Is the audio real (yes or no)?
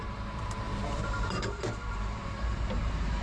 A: no